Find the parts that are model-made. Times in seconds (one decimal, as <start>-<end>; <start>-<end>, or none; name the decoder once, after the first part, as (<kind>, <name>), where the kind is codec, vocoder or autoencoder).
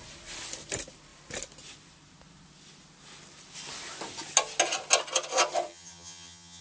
5.7-6.6 (vocoder, HiFi-GAN)